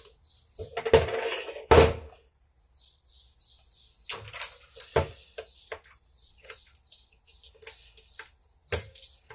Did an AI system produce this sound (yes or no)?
no